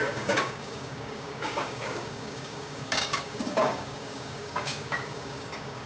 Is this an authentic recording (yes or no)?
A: no